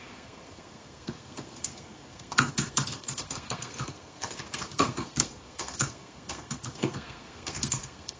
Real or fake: fake